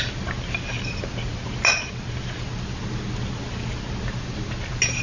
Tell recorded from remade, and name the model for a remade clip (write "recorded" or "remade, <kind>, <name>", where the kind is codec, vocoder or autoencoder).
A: recorded